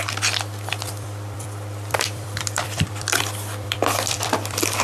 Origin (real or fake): fake